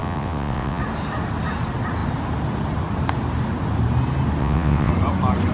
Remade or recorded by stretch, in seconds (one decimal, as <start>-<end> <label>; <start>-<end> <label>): 0.0-0.8 remade; 0.8-4.4 recorded; 4.4-4.9 remade; 4.9-5.5 recorded

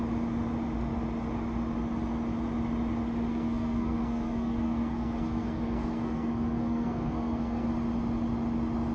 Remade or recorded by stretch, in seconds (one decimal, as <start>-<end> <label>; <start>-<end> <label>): 0.0-3.3 recorded; 3.3-7.7 remade; 7.7-8.9 recorded

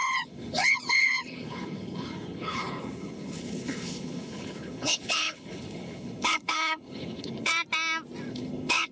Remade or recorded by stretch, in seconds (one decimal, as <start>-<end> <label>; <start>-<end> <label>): 0.0-7.5 remade; 7.5-8.3 recorded; 8.3-8.9 remade

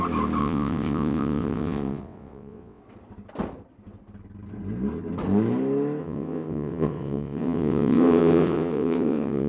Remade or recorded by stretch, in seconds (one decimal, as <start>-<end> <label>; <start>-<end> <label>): 0.0-0.4 recorded; 0.4-2.8 remade; 2.8-6.0 recorded; 6.0-9.5 remade

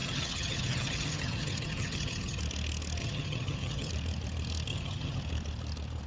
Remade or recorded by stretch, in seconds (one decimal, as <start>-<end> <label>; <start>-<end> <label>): 0.0-2.4 remade; 2.4-3.0 recorded; 3.0-3.9 remade; 3.9-4.7 recorded; 4.7-5.2 remade; 5.2-6.1 recorded

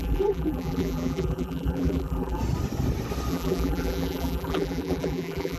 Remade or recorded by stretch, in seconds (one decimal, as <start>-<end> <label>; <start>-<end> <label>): 0.0-2.4 remade; 2.4-3.3 recorded; 3.3-5.6 remade

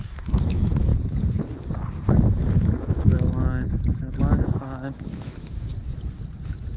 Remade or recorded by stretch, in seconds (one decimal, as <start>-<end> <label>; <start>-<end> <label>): 0.0-0.9 remade; 0.9-2.5 recorded; 2.5-5.7 remade; 5.7-6.8 recorded